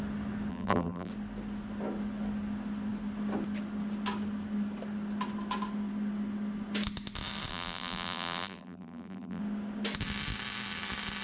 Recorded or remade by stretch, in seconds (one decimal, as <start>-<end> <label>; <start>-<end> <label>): 0.0-0.5 recorded; 0.5-1.1 remade; 1.1-7.5 recorded; 7.5-9.4 remade; 9.4-11.2 recorded